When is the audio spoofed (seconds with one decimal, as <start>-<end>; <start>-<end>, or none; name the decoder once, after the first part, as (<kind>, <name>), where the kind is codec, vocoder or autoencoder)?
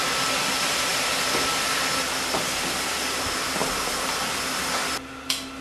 none